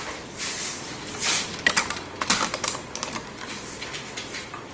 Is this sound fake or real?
real